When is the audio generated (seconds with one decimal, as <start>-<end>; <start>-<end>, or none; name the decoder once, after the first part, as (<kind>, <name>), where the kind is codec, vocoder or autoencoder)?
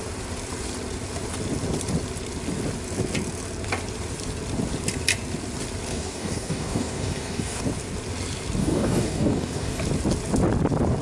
5.9-7.6 (codec, DAC); 8.6-9.8